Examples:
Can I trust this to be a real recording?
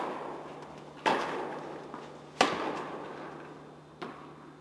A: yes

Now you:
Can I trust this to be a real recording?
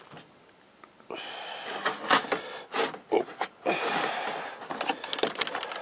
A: yes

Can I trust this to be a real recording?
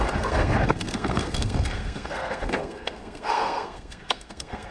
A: no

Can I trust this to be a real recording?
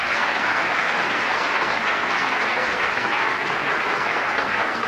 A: no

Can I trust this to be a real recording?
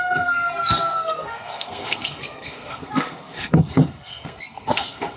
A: no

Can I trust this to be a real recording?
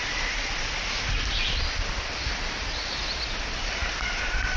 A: yes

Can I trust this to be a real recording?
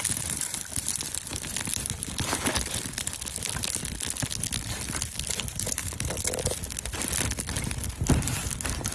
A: yes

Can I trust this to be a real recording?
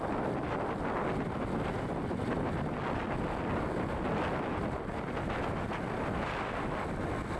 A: yes